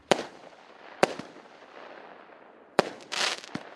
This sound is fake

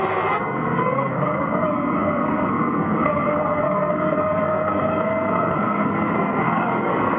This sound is fake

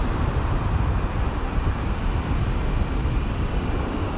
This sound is fake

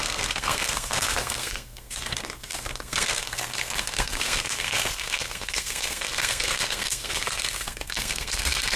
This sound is fake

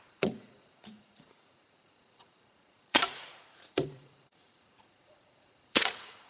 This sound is fake